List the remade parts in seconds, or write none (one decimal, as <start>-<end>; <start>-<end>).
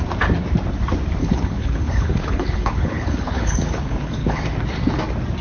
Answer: 1.2-4.4